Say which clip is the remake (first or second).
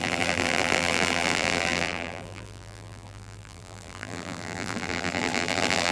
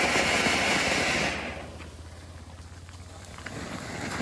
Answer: first